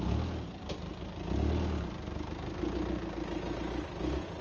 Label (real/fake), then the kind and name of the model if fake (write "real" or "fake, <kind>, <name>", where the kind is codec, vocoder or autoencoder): real